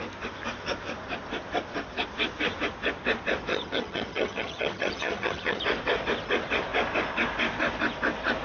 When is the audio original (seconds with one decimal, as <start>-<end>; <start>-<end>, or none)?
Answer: 0.0-3.5; 5.6-8.4